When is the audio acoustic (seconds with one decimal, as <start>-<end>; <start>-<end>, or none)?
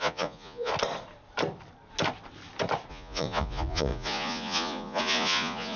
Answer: 0.7-2.9